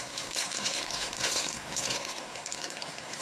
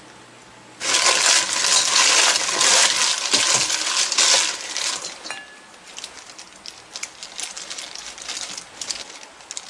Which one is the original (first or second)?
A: second